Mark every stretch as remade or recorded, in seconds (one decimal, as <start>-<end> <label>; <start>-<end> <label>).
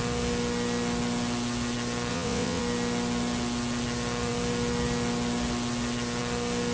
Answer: 0.0-2.1 recorded; 2.1-2.6 remade; 2.6-6.7 recorded